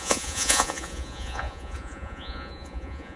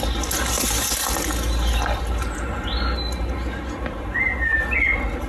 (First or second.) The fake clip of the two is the first